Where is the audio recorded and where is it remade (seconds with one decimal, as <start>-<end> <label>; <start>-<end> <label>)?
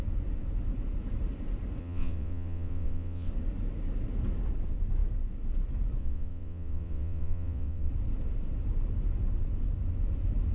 0.0-1.8 recorded; 1.8-3.3 remade; 3.3-6.0 recorded; 6.0-7.9 remade; 7.9-10.5 recorded